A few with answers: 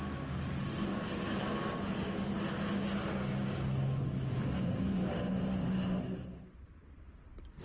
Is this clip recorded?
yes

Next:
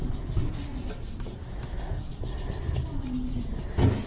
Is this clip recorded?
yes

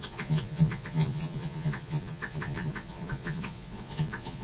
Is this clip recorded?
no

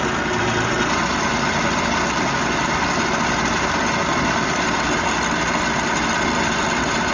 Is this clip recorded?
yes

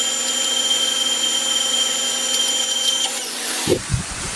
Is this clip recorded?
no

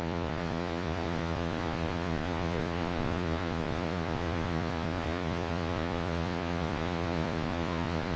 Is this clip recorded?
no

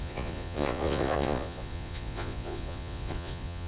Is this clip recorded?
no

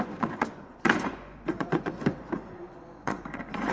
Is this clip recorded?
no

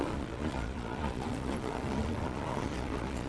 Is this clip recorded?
no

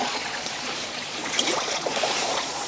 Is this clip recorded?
no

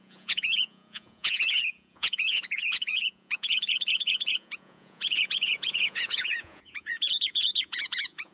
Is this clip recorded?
no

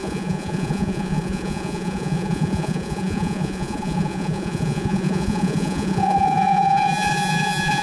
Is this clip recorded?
no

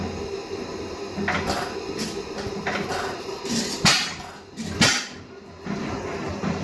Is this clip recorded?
yes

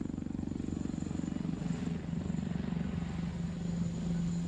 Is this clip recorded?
yes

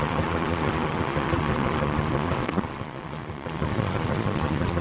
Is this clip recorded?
no